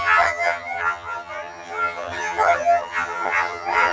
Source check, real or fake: fake